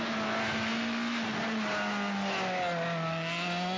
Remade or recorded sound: recorded